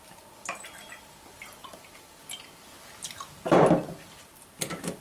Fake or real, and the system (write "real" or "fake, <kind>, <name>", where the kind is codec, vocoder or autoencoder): real